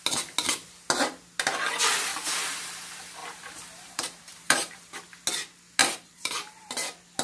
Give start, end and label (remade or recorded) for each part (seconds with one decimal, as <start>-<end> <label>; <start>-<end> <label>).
0.0-2.1 recorded; 2.1-2.7 remade; 2.7-3.2 recorded; 3.2-4.9 remade; 4.9-5.8 recorded; 5.8-6.7 remade; 6.7-7.2 recorded